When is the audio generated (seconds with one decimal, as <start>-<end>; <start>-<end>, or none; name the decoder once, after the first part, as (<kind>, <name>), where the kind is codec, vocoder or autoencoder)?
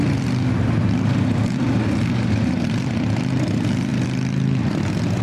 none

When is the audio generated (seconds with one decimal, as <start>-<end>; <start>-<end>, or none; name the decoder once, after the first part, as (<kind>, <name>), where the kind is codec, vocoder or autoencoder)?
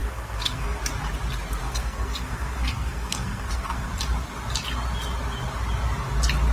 0.0-0.8 (codec, SNAC); 1.6-3.9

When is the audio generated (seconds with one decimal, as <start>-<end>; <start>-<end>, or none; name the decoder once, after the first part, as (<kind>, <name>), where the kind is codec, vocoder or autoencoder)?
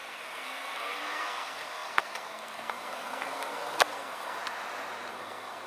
0.0-4.4 (codec, SNAC); 5.1-5.7